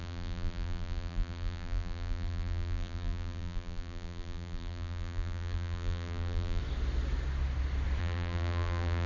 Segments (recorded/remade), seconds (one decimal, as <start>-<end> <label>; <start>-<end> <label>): 0.0-6.6 remade; 6.6-8.0 recorded; 8.0-9.1 remade